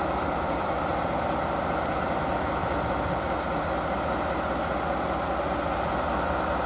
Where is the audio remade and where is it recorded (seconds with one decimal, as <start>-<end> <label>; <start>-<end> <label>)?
0.0-0.9 remade; 0.9-1.9 recorded; 1.9-2.6 remade; 2.6-6.7 recorded